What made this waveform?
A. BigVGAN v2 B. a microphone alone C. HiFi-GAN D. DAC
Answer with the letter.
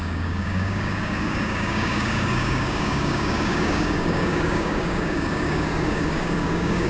D